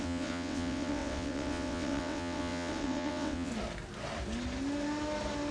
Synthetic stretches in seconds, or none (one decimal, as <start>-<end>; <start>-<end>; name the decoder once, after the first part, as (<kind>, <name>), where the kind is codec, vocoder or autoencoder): 0.0-3.5 (vocoder, WaveNeXt)